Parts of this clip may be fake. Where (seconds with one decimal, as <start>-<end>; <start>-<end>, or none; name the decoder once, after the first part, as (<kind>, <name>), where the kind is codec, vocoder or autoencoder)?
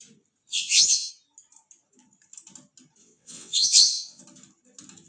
0.5-1.1 (vocoder, WaveNeXt); 3.0-4.2